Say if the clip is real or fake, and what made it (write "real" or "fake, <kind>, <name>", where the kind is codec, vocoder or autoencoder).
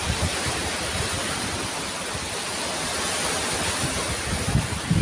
real